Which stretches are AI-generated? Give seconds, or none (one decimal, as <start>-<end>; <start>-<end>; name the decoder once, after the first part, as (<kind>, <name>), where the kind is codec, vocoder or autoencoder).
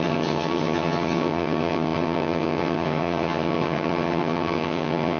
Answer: 0.0-5.2 (vocoder, HiFi-GAN)